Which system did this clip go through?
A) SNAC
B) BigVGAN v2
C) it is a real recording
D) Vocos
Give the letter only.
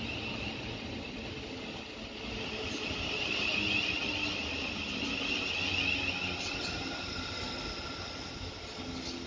C